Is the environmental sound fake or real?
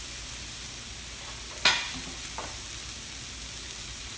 real